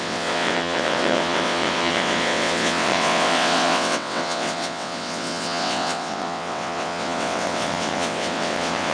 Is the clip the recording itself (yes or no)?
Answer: no